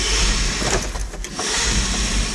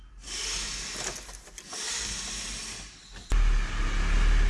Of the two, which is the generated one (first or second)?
first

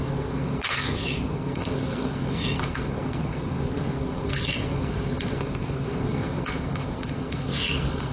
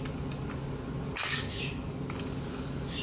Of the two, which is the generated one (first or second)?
first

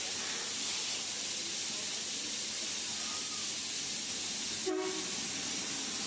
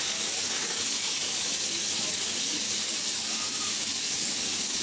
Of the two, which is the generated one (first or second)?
second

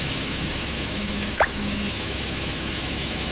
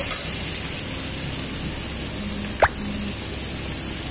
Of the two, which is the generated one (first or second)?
first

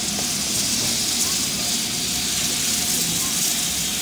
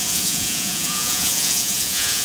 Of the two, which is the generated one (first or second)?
second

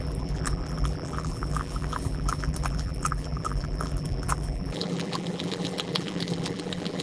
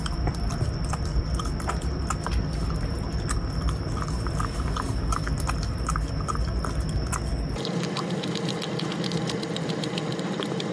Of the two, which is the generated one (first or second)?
first